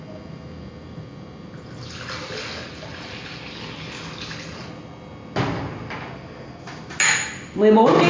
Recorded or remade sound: recorded